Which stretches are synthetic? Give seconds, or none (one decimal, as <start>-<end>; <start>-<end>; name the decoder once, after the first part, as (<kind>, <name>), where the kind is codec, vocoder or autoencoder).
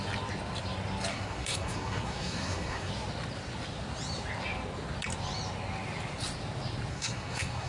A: 1.1-2.9 (codec, SNAC); 6.9-7.7